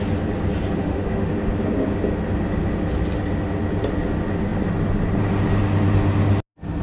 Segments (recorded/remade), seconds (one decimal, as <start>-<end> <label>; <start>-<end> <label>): 0.0-0.8 recorded; 0.8-1.3 remade; 1.3-6.8 recorded